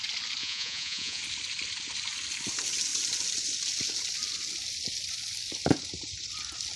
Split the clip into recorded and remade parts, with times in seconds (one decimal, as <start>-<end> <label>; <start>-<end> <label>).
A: 0.0-0.4 recorded; 0.4-1.2 remade; 1.2-6.8 recorded